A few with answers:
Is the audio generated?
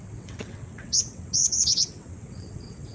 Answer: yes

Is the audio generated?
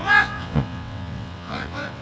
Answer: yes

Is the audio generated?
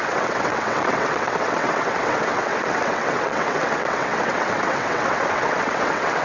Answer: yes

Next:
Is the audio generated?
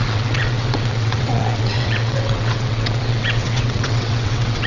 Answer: yes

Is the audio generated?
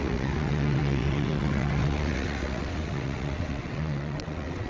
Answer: yes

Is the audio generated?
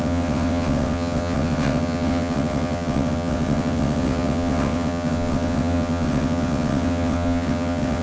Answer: yes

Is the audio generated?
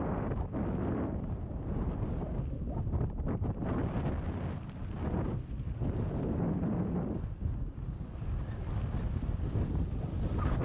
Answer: no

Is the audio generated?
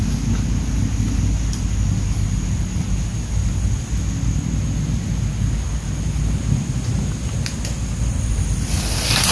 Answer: no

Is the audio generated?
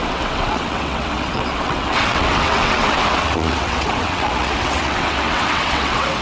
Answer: yes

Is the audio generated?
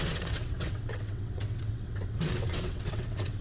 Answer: yes